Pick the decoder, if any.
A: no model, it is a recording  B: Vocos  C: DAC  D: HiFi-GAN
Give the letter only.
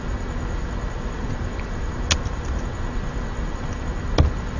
A